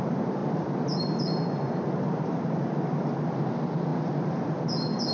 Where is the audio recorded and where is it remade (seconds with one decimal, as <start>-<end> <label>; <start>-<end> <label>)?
0.0-5.1 remade